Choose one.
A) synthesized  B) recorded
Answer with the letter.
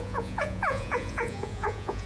A